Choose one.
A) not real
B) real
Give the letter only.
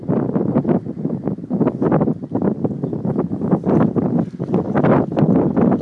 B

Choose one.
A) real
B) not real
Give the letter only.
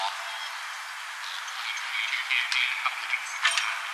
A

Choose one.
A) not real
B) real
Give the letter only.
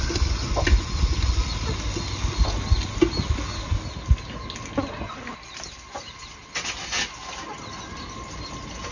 B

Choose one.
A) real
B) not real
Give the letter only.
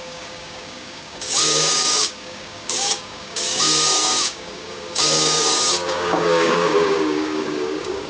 B